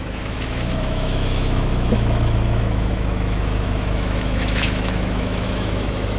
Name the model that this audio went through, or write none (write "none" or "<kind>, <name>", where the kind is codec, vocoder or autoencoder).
autoencoder, DAC-VAE